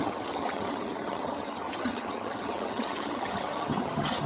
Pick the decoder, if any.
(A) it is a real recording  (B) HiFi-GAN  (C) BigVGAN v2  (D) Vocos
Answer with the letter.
B